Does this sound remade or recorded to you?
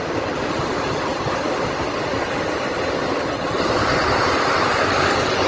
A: recorded